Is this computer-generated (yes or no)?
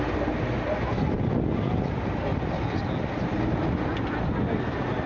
no